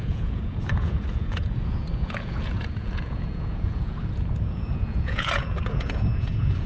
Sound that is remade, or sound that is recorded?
remade